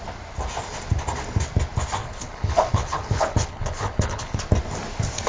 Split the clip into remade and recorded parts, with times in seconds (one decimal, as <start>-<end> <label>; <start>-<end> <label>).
0.0-2.0 recorded; 2.0-4.4 remade; 4.4-5.3 recorded